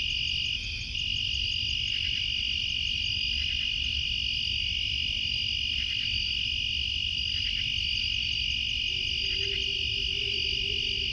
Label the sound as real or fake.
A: real